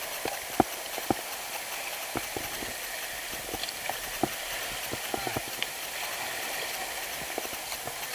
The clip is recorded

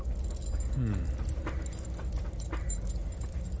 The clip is recorded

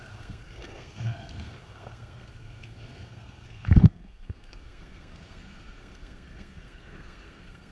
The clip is remade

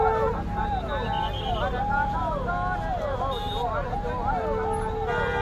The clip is recorded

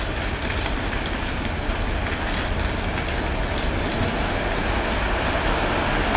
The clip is recorded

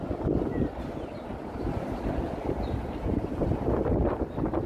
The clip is recorded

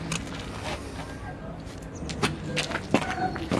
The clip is recorded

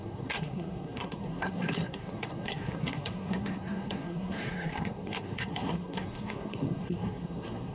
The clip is remade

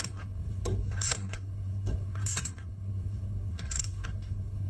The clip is remade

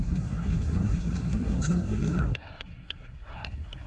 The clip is remade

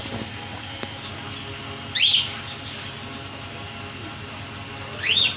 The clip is recorded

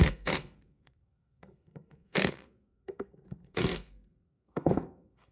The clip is remade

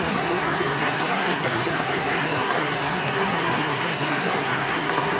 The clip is remade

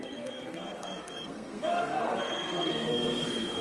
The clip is remade